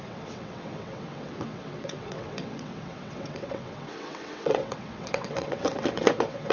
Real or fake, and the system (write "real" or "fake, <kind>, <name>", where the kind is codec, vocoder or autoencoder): fake, vocoder, WaveNeXt